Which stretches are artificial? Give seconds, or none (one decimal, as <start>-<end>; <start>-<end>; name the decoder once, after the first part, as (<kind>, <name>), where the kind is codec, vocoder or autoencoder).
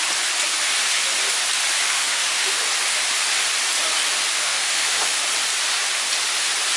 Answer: 1.8-2.6 (autoencoder, DAC-VAE); 4.4-5.2